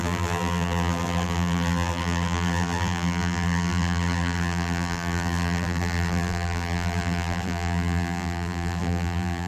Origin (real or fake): fake